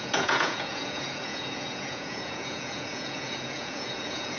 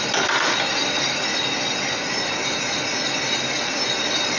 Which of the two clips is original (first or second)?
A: second